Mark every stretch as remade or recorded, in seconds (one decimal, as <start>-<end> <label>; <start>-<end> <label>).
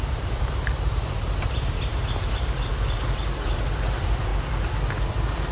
0.0-4.3 remade; 4.3-5.1 recorded; 5.1-5.5 remade